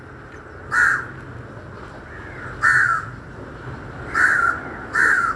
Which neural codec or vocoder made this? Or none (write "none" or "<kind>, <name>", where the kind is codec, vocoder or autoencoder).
none